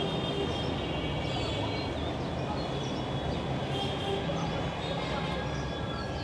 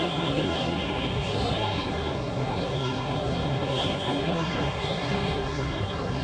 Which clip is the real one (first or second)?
first